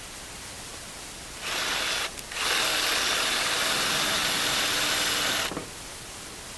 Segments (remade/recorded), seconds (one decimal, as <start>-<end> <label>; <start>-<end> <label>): 0.0-6.6 recorded